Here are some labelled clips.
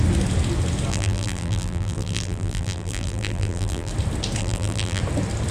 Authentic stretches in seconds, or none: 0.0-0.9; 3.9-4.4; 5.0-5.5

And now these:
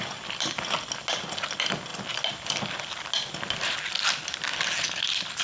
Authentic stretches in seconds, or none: 0.0-5.4

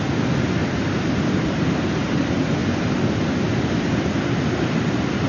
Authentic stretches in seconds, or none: 0.0-0.6; 2.1-5.3

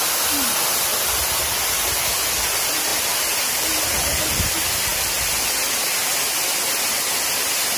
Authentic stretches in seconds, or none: 0.0-2.9; 4.5-7.8

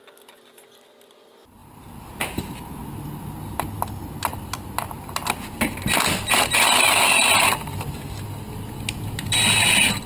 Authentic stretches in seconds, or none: 0.0-10.1

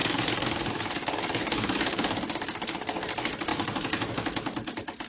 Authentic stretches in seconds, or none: 1.0-1.4; 2.7-3.5; 4.1-5.1